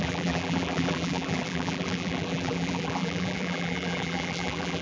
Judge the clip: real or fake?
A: fake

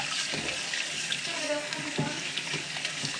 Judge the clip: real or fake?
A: fake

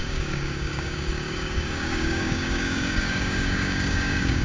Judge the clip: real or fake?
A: fake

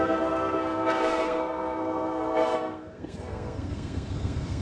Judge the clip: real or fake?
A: fake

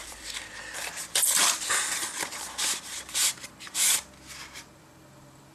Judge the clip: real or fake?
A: fake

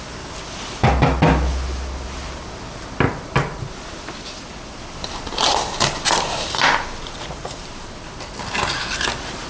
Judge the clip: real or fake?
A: real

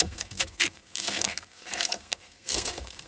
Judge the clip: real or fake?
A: fake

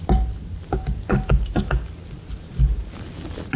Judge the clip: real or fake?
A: real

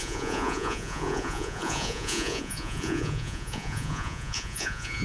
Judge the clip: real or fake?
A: fake